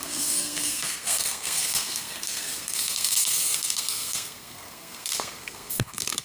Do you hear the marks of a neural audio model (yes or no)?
yes